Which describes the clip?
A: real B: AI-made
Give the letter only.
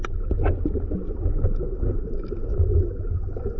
A